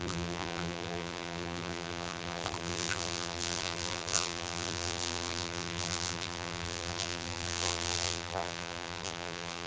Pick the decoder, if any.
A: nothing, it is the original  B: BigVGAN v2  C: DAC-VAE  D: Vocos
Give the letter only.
B